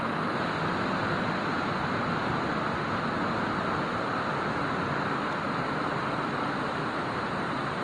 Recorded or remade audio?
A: recorded